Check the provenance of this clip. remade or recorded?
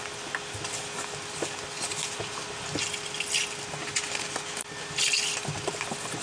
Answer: recorded